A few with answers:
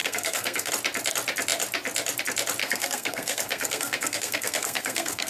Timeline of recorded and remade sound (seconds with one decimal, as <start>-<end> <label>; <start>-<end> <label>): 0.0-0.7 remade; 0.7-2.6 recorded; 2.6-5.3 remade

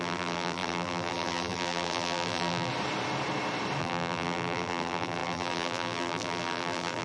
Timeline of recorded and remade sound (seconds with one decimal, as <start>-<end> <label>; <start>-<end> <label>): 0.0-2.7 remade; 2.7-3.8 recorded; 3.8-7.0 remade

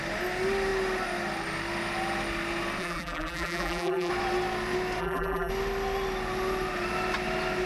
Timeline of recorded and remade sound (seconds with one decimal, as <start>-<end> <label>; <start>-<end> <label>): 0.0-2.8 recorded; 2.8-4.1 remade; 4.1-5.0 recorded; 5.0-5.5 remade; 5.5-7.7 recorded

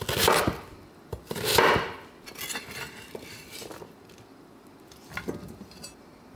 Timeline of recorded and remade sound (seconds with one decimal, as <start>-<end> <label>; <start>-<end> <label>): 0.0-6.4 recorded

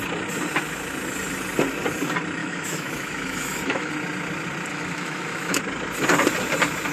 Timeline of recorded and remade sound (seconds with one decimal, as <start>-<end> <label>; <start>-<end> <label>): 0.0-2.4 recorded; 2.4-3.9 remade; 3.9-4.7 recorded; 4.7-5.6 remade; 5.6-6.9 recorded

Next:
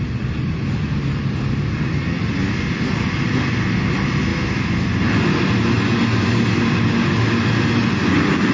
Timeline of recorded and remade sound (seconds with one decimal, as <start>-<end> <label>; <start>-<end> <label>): 0.0-4.3 recorded; 4.3-4.9 remade; 4.9-8.5 recorded

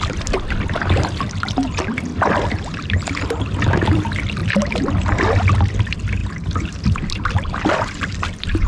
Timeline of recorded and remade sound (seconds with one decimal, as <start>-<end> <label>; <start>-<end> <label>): 0.0-4.4 remade; 4.4-5.8 recorded; 5.8-6.2 remade; 6.2-6.8 recorded; 6.8-8.7 remade